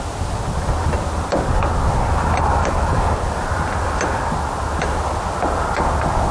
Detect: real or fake real